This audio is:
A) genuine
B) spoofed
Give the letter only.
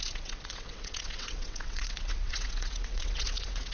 B